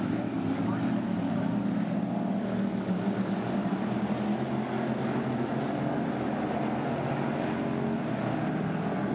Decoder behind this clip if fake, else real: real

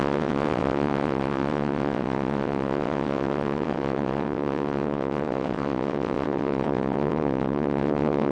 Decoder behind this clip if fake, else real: fake, vocoder, WaveNeXt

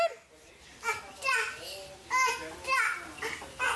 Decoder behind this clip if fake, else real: real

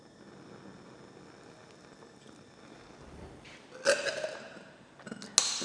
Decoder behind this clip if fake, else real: real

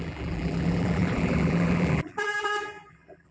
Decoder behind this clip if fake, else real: fake, vocoder, BigVGAN v2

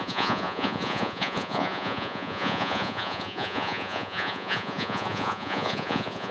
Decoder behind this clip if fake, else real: fake, vocoder, Vocos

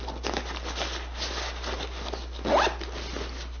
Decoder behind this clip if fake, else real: real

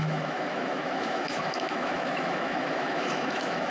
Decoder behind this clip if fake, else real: fake, autoencoder, DAC-VAE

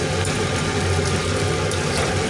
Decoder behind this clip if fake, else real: real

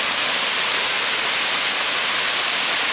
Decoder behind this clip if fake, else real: real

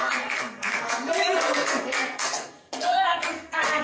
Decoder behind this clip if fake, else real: fake, codec, SNAC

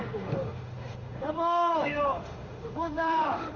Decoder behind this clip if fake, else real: fake, autoencoder, DAC-VAE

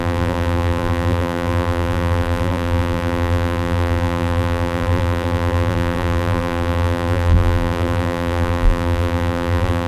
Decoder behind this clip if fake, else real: fake, vocoder, BigVGAN v2